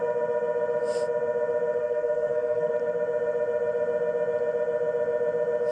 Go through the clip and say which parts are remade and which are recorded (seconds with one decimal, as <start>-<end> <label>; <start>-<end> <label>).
0.0-1.8 recorded; 1.8-2.7 remade; 2.7-5.7 recorded